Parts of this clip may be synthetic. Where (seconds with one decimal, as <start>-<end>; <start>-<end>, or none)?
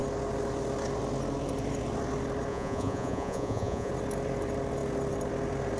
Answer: 2.5-3.9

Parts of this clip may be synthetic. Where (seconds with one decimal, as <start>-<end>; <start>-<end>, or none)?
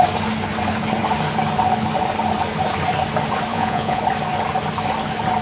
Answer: 3.5-4.0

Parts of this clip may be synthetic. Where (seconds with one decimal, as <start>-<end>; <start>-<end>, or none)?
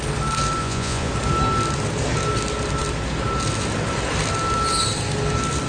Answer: 0.6-1.1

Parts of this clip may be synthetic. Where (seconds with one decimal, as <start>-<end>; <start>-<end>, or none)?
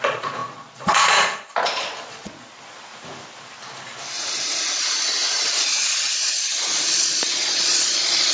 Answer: 0.0-2.9; 7.0-8.3